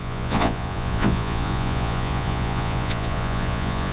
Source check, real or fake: fake